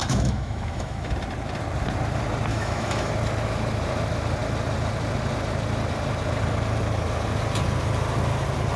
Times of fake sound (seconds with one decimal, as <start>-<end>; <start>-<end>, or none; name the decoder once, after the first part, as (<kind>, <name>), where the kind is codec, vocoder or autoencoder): 0.0-1.1 (autoencoder, DAC-VAE); 2.5-3.1

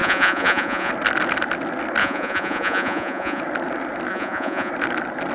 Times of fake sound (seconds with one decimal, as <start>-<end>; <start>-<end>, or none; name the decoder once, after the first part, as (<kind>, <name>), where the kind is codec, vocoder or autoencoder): 0.0-0.9 (vocoder, Vocos); 2.0-3.4; 4.1-4.7

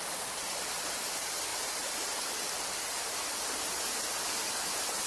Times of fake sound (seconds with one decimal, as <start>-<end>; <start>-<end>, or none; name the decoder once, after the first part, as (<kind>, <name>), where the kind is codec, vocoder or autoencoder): none

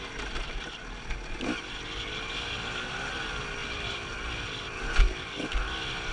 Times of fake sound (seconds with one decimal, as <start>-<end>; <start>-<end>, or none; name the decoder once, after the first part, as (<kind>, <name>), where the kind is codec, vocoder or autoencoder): none

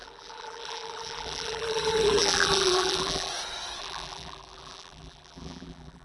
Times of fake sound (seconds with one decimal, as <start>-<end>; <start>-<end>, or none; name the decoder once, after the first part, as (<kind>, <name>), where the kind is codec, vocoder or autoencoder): 0.0-3.3 (vocoder, BigVGAN v2); 3.8-6.0